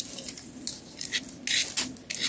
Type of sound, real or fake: real